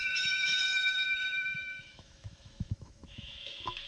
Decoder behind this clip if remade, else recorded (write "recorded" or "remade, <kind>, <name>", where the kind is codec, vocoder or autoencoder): remade, autoencoder, DAC-VAE